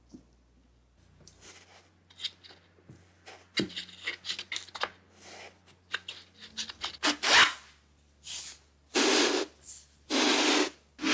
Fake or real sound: real